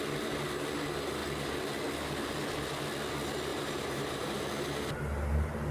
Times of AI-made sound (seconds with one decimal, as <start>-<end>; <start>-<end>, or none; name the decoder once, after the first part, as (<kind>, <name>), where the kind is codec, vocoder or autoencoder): 3.5-4.4 (vocoder, BigVGAN v2)